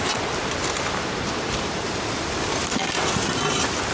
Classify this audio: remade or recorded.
recorded